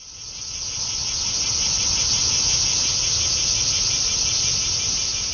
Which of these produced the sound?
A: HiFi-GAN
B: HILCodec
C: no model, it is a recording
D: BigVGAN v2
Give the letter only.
C